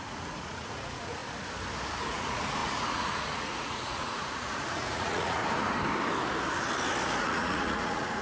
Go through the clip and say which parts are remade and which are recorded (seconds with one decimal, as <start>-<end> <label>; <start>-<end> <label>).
0.0-1.2 remade; 1.2-2.0 recorded; 2.0-5.4 remade; 5.4-7.2 recorded; 7.2-8.2 remade